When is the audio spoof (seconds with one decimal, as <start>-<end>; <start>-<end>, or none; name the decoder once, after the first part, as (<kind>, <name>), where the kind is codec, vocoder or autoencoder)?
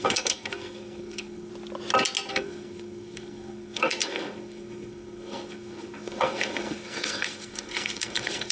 0.0-1.5 (codec, SNAC); 2.3-8.5